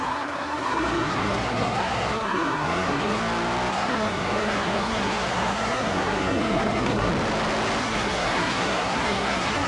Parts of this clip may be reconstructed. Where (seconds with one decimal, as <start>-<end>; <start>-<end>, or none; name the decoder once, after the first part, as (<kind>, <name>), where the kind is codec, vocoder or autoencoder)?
0.0-3.2 (codec, SNAC); 3.7-7.1; 7.8-9.7